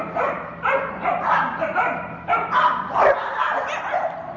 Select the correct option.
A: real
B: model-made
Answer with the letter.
A